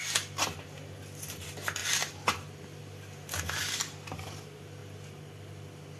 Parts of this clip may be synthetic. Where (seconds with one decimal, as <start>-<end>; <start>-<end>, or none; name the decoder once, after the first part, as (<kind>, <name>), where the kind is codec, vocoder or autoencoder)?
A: none